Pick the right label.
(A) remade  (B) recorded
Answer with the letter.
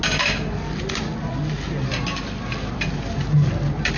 B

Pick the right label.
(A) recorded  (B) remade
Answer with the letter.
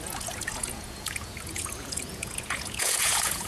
B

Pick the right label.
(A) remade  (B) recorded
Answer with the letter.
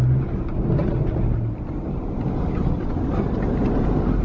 B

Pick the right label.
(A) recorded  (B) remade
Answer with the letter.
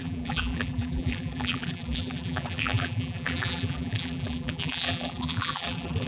B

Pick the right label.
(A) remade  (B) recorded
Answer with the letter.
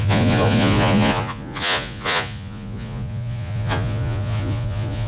A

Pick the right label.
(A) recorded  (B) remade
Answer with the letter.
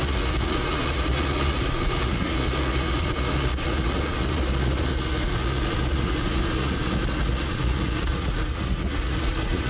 B